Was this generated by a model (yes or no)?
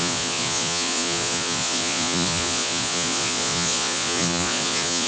yes